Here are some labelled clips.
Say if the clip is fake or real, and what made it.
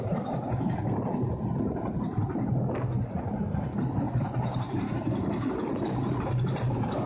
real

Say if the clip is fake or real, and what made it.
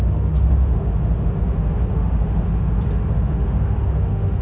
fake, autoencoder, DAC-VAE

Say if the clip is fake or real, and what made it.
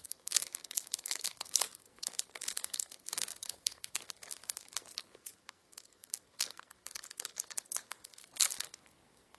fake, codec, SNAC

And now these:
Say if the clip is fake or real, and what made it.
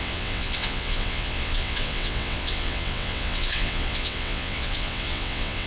fake, vocoder, WaveNeXt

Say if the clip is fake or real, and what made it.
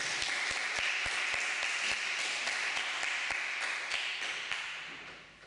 real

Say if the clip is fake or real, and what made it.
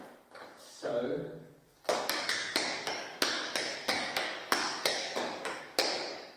fake, codec, DAC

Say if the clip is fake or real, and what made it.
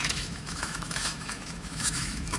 fake, autoencoder, DAC-VAE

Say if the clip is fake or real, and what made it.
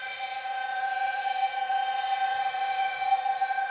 fake, vocoder, Vocos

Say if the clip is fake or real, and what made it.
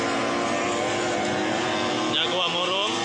real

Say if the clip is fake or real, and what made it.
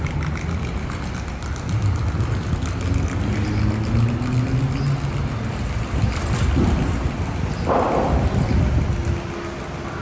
real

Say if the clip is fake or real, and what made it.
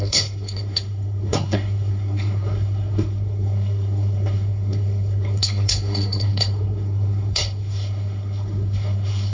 fake, codec, SNAC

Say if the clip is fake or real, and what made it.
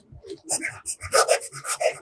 real